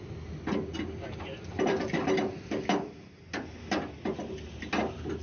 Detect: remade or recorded recorded